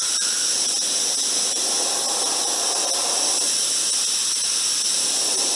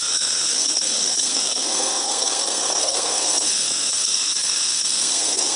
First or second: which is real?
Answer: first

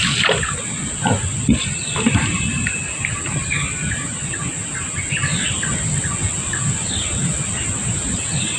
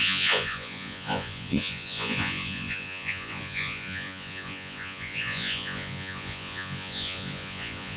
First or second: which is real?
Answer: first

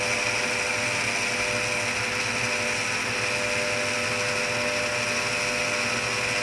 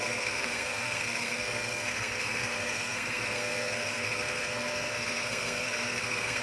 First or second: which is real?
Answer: first